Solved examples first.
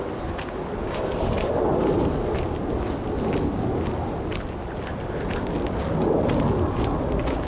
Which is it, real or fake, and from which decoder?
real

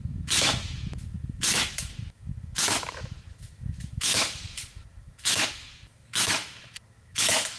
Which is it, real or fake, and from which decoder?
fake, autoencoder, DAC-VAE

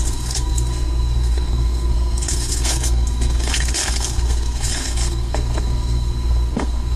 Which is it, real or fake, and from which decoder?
fake, codec, SNAC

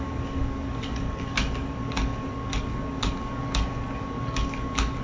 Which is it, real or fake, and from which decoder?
fake, codec, DAC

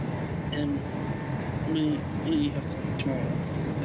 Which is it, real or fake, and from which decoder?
real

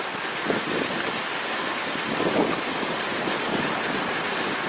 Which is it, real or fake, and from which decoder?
real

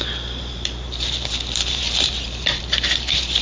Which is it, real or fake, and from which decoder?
fake, vocoder, BigVGAN v2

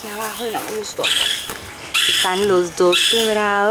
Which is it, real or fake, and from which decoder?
fake, codec, DAC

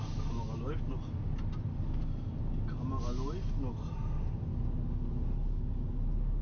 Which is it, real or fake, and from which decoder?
real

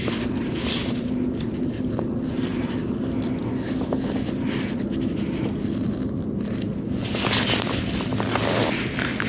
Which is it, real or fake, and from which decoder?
real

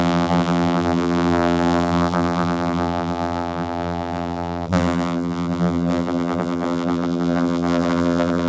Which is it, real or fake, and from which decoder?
fake, vocoder, BigVGAN v2